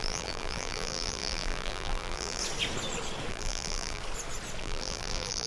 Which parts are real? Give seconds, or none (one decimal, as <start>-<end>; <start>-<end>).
2.4-3.3; 4.0-4.6